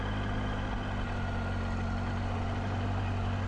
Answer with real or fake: real